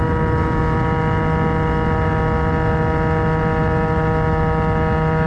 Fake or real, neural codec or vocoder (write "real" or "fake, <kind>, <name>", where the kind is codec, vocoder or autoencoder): real